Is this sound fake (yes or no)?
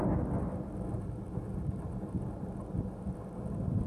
no